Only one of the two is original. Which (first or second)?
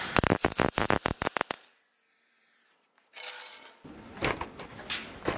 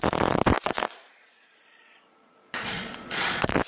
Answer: first